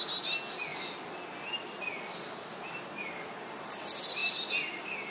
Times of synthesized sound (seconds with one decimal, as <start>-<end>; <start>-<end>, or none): none